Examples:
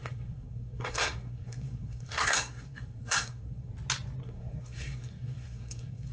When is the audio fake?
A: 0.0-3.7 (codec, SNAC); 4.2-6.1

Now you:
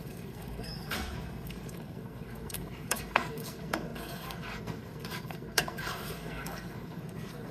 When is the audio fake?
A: 0.0-7.5 (codec, SNAC)

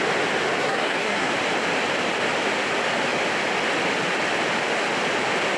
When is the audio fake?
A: 0.6-1.3 (codec, SNAC)

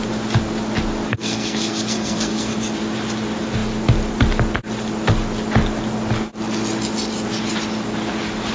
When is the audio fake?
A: 1.1-2.5 (codec, SNAC)